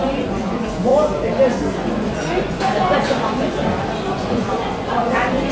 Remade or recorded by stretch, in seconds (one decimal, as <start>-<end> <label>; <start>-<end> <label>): 0.0-0.9 remade; 0.9-1.7 recorded; 1.7-3.6 remade; 3.6-4.1 recorded; 4.1-5.5 remade